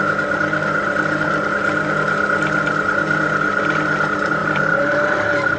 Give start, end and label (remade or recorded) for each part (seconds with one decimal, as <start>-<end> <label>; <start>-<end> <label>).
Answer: 0.0-4.4 recorded; 4.4-5.6 remade